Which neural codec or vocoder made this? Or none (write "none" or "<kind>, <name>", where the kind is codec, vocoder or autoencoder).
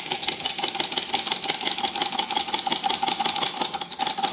none